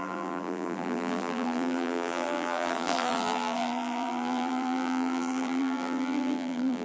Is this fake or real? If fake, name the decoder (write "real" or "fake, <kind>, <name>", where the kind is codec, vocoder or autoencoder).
fake, vocoder, BigVGAN v2